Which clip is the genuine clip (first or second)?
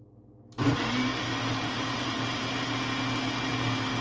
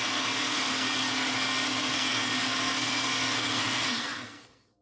first